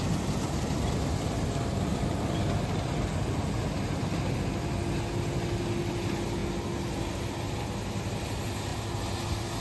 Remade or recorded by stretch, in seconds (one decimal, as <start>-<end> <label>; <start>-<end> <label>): 0.0-9.6 recorded